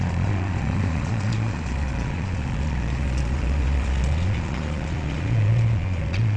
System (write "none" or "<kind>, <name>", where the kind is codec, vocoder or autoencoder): vocoder, Vocos